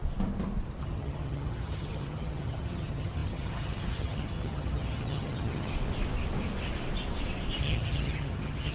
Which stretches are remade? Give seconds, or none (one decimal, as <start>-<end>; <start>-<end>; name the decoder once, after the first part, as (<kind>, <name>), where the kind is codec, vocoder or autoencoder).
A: 0.8-5.7 (vocoder, HiFi-GAN); 7.6-8.7